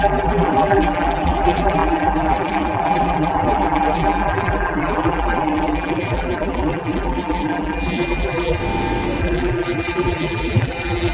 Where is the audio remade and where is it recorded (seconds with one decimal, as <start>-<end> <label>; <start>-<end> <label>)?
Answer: 0.0-8.6 remade; 8.6-9.2 recorded; 9.2-11.1 remade